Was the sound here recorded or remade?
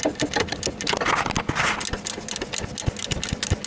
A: recorded